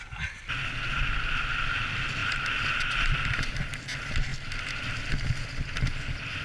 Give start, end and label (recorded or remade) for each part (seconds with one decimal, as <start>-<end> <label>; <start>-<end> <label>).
0.0-6.4 recorded

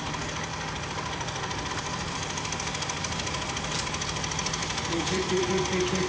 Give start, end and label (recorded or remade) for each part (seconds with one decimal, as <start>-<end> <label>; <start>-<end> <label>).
0.0-0.5 recorded; 0.5-1.7 remade; 1.7-4.6 recorded; 4.6-5.4 remade; 5.4-6.1 recorded

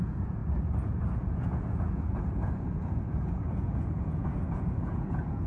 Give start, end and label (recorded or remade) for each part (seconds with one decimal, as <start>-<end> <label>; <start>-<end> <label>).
0.0-5.5 remade